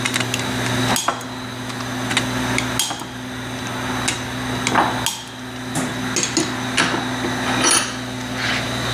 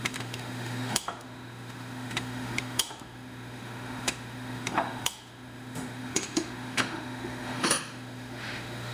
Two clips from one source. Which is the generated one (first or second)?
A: second